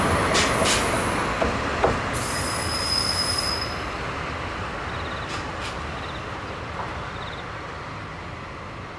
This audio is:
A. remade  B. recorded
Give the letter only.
B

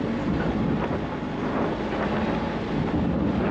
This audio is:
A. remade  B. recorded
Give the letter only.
B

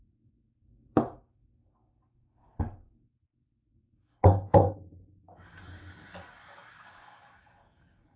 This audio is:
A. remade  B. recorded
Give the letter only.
A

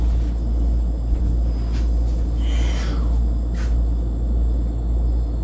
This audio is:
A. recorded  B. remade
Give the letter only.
A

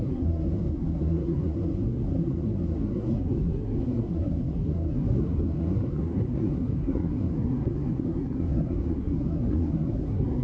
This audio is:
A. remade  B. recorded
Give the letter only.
A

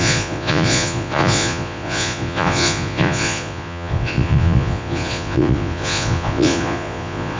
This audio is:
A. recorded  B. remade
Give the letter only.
B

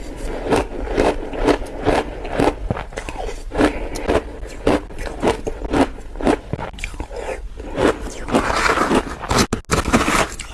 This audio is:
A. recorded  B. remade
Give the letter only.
A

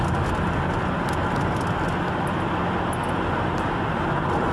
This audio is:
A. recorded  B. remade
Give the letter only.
A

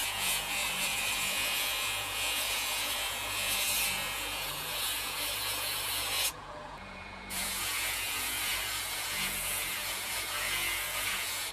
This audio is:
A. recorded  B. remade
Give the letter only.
B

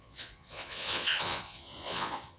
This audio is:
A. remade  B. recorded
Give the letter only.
A